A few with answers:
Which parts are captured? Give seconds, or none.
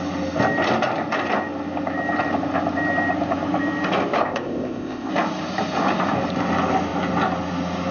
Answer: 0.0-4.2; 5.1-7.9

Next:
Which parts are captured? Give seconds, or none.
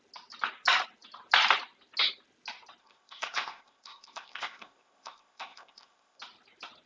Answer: 0.0-2.8; 6.2-6.9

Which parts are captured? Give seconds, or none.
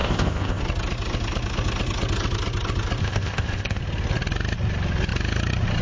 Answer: 0.6-3.0; 3.8-5.8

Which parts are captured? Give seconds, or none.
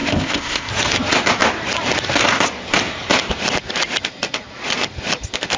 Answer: 0.7-5.6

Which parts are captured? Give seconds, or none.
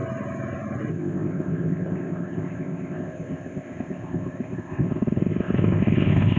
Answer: 0.0-0.9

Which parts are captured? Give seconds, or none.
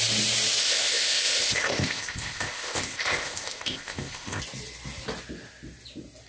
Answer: 0.0-0.6; 4.4-6.3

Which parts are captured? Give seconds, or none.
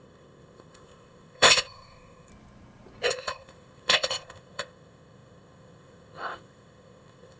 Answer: 2.3-3.1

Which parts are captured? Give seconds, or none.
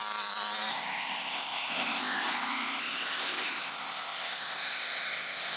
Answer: 0.0-0.7